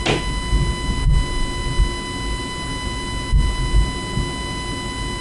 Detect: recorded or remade recorded